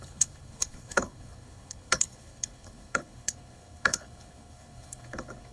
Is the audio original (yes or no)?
no